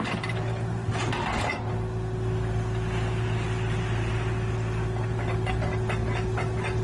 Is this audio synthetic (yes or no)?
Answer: no